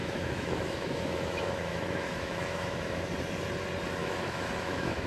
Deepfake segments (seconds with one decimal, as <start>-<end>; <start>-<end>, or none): 0.0-3.1; 4.0-5.1